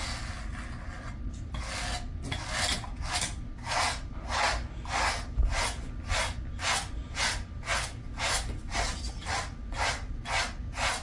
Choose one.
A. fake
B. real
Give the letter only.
B